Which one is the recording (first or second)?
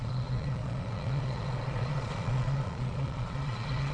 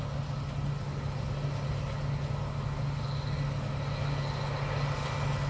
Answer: second